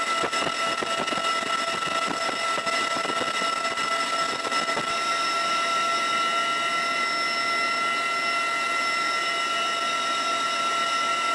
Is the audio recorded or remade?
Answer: recorded